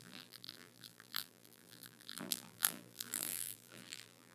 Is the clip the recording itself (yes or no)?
no